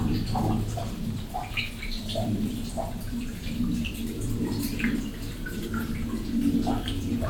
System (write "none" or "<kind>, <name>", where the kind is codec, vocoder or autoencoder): vocoder, BigVGAN v2